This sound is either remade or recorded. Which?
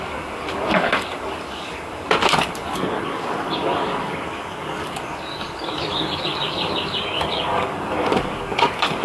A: remade